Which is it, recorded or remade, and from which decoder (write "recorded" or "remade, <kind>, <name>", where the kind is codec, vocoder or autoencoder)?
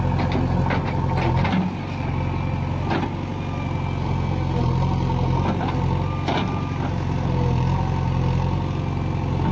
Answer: recorded